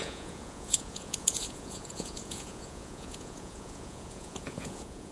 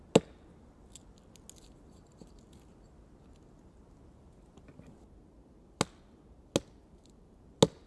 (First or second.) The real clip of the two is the second